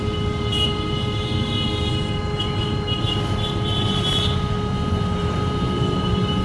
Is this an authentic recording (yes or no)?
no